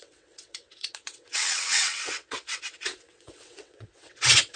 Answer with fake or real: fake